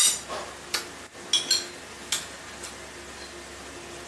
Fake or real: real